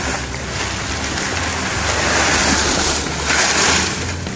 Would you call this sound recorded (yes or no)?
yes